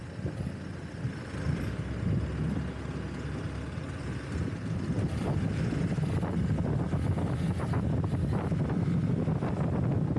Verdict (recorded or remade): recorded